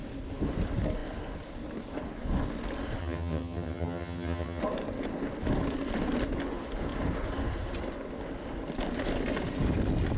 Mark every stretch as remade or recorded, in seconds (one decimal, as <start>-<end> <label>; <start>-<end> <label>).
0.0-3.0 recorded; 3.0-4.6 remade; 4.6-10.2 recorded